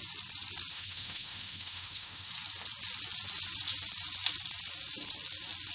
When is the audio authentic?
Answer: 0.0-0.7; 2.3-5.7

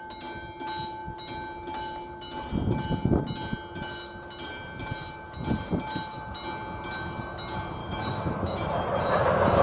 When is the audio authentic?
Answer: 0.0-7.8; 9.0-9.6

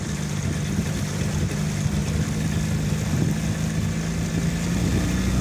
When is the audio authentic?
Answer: 0.0-5.4